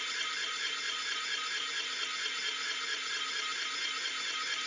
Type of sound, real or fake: real